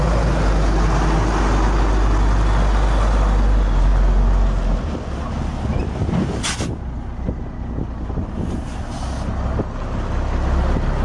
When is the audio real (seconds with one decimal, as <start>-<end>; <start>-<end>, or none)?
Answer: 0.0-11.0